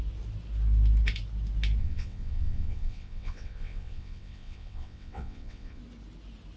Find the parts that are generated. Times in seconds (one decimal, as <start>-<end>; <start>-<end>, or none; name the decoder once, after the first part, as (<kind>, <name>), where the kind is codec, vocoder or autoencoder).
1.8-5.8 (vocoder, WaveNeXt)